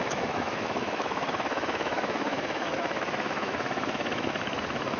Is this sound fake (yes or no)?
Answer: yes